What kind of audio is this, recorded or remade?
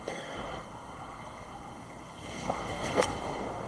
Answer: remade